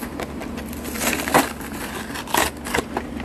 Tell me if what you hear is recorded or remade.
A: recorded